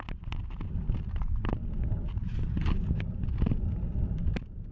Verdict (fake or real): real